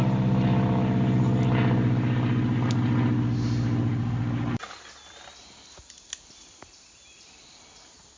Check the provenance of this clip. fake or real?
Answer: real